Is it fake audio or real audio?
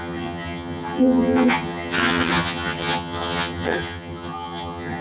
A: fake